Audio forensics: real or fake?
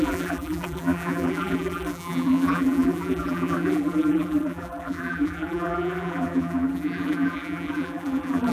fake